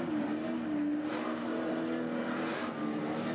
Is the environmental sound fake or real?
real